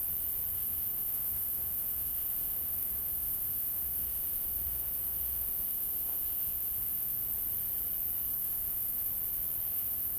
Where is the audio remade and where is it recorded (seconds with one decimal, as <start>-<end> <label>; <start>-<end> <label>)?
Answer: 0.0-0.5 recorded; 0.5-7.2 remade; 7.2-8.3 recorded; 8.3-9.1 remade; 9.1-9.7 recorded; 9.7-10.2 remade